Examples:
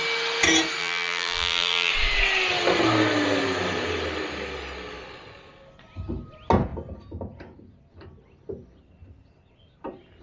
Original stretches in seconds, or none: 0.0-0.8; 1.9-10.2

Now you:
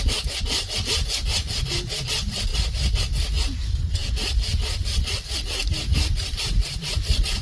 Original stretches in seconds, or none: 0.0-7.4